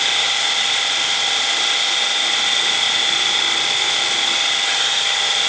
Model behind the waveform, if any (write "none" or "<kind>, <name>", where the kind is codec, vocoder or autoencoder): none